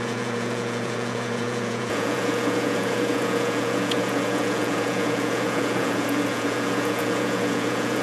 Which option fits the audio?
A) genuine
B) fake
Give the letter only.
B